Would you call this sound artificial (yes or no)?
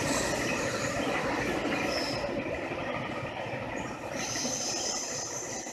no